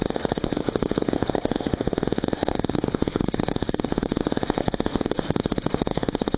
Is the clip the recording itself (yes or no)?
no